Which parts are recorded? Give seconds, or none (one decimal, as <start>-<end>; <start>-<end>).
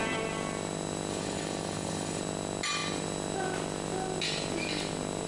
0.0-1.1; 2.2-5.3